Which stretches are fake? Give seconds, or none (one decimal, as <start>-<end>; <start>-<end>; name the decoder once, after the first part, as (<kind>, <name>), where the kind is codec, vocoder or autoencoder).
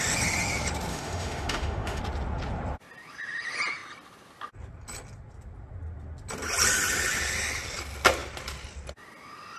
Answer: 0.9-2.0 (autoencoder, DAC-VAE)